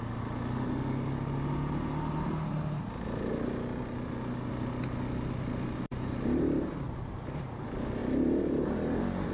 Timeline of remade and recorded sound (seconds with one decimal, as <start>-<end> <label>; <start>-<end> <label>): 0.0-9.3 recorded